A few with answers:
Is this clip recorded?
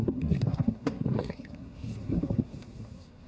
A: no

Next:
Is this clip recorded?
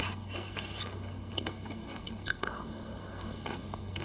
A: no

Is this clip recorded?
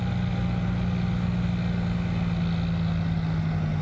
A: yes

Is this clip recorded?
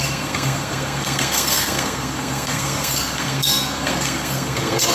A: no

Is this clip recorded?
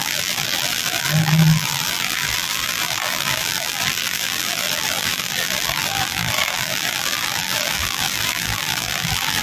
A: no